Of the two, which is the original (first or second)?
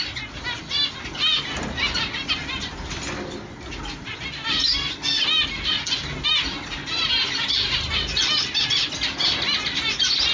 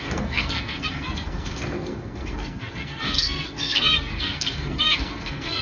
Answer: first